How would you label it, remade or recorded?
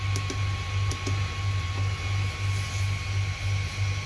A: recorded